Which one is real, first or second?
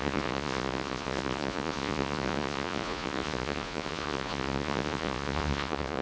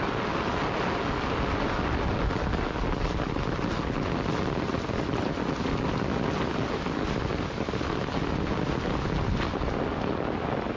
second